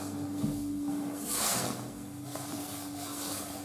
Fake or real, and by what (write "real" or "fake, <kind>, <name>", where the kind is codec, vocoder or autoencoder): fake, codec, SNAC